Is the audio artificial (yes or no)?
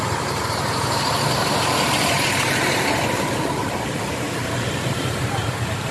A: yes